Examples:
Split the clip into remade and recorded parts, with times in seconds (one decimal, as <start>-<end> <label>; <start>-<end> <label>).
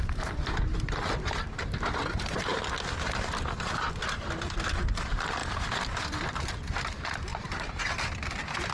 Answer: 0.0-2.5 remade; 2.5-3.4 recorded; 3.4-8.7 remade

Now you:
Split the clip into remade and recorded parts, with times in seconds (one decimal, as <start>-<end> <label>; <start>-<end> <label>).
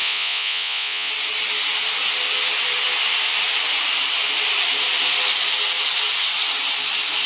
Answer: 0.0-1.1 remade; 1.1-7.3 recorded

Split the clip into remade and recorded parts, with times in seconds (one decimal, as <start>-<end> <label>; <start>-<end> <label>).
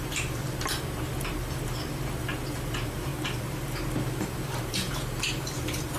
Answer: 0.0-3.1 remade; 3.1-4.2 recorded; 4.2-6.0 remade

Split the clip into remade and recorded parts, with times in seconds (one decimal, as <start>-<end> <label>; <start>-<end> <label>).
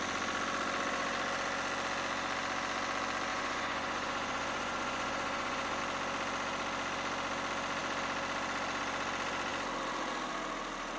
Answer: 0.0-3.3 recorded; 3.3-5.8 remade; 5.8-11.0 recorded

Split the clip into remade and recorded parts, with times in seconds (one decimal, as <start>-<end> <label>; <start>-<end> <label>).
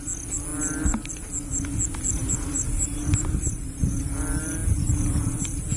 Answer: 0.0-2.2 recorded; 2.2-4.1 remade; 4.1-5.8 recorded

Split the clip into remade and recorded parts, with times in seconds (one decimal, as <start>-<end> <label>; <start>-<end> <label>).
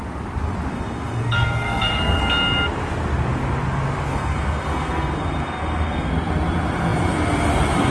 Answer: 0.0-0.7 recorded; 0.7-2.2 remade; 2.2-4.1 recorded; 4.1-6.1 remade; 6.1-7.9 recorded